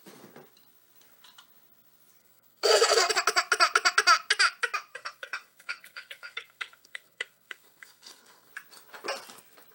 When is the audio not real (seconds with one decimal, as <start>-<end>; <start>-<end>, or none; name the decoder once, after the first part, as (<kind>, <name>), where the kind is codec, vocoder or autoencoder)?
2.2-3.1 (codec, SNAC); 4.9-8.5

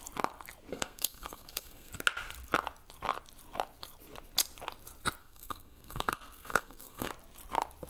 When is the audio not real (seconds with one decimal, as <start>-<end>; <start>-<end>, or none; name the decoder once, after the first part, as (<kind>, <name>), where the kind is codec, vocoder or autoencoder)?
0.7-1.9 (codec, SNAC); 5.2-7.1

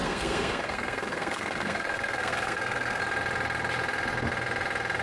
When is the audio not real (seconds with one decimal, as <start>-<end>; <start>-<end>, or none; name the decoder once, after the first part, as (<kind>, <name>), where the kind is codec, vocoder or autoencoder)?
0.0-3.0 (codec, SNAC)